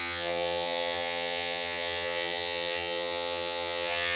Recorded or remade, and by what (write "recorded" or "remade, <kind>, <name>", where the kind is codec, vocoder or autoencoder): remade, vocoder, HiFi-GAN